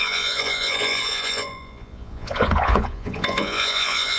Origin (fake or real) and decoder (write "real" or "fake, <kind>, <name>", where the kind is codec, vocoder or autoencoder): fake, vocoder, Vocos